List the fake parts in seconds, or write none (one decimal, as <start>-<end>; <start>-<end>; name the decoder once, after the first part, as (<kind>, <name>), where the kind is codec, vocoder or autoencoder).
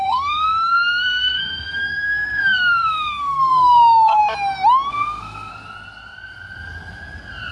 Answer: 0.0-4.2 (codec, SNAC); 4.9-5.5